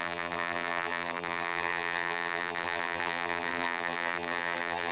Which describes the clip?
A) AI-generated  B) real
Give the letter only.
A